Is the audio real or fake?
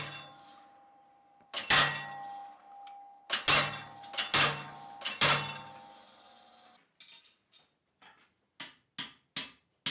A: real